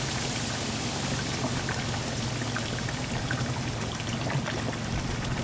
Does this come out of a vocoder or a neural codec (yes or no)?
no